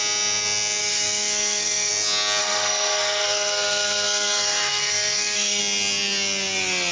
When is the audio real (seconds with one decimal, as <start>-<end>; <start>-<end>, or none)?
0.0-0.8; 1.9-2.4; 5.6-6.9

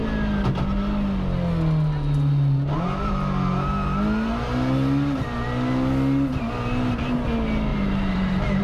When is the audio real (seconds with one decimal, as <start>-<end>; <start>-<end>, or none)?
0.0-7.7

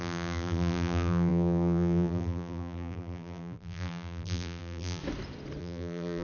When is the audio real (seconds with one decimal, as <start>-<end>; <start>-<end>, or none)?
5.0-5.6

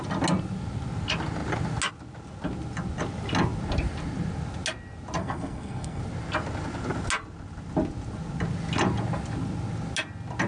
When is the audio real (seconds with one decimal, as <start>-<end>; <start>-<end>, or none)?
0.0-5.2; 6.0-10.5

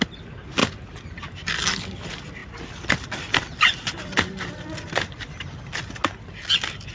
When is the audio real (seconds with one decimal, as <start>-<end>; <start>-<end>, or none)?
0.0-0.6; 1.5-6.9